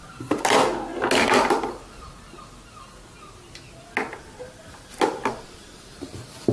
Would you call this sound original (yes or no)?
yes